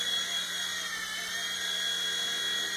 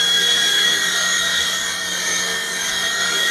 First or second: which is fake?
second